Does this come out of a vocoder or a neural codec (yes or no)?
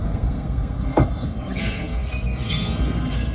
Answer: yes